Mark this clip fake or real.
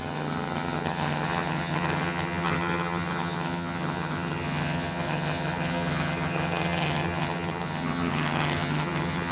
fake